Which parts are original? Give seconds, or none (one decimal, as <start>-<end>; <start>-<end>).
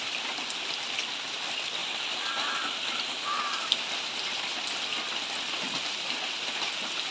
0.0-1.8; 2.3-7.1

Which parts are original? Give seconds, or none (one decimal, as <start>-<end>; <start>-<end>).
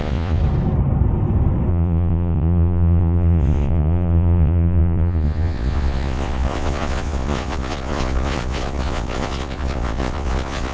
0.4-1.7